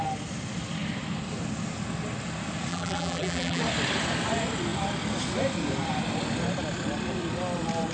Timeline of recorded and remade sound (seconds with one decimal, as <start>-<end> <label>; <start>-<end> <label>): 0.0-2.7 recorded; 2.7-3.6 remade; 3.6-7.9 recorded